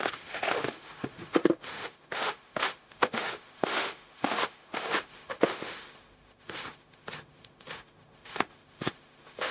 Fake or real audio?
fake